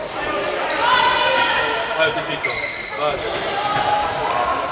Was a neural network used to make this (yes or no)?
no